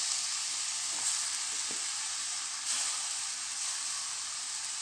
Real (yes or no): yes